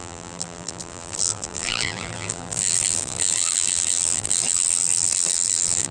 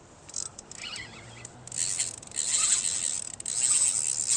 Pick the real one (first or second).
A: second